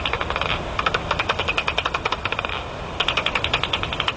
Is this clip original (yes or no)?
yes